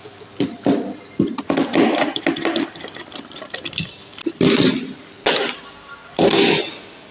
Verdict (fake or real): real